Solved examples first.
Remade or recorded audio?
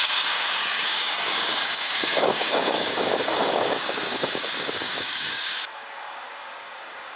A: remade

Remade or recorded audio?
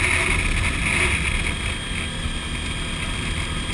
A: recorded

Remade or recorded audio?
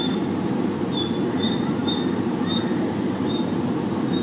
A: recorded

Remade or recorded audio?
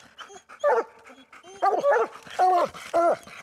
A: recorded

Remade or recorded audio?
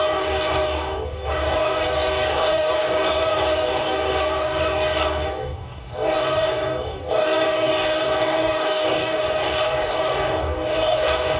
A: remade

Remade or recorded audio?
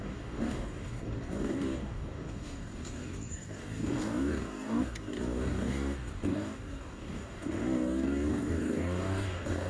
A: remade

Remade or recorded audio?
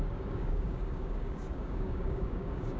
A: remade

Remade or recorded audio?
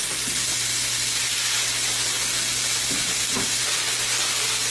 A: recorded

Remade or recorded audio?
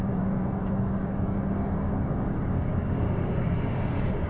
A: remade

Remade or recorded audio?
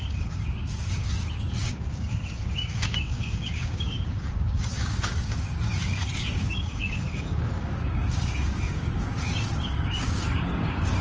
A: remade